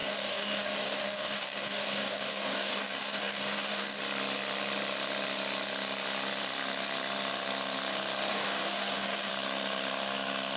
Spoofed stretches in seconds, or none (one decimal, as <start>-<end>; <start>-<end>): 0.0-4.0; 8.3-9.3